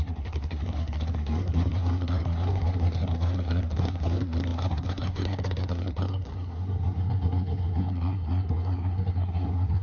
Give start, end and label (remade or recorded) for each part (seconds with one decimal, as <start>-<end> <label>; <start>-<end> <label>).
0.0-9.8 remade